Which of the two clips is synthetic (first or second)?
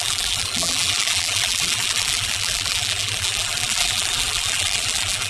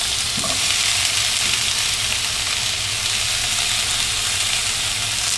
first